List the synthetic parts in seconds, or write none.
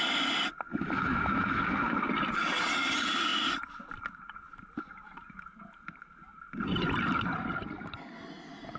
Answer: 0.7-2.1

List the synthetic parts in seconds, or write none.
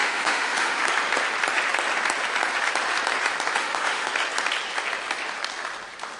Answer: 0.0-0.9; 3.6-4.1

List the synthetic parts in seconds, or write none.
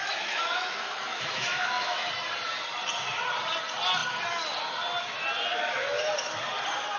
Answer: 0.0-2.1; 5.5-6.1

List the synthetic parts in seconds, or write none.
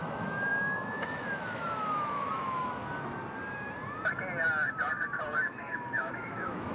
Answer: 0.0-2.8; 5.4-6.7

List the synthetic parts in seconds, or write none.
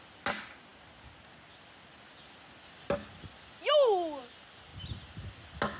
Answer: none